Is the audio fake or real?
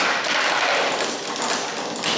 real